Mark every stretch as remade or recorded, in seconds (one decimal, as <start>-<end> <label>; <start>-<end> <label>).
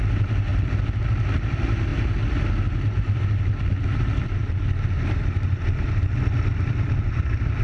0.0-0.5 remade; 0.5-1.0 recorded; 1.0-1.9 remade; 1.9-2.7 recorded; 2.7-7.6 remade